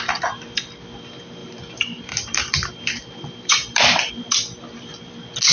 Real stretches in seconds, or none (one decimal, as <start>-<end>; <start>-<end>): 0.0-1.4; 4.1-5.5